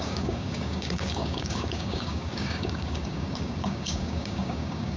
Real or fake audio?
fake